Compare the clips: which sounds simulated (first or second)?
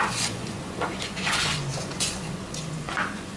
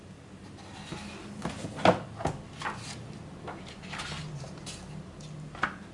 first